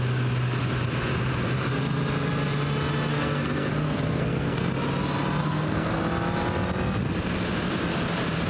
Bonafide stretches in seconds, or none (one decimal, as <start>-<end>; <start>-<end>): 0.0-3.1; 4.7-5.4; 6.0-8.5